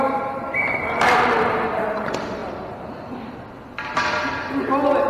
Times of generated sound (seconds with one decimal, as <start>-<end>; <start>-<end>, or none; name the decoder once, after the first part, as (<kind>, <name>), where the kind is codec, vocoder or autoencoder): none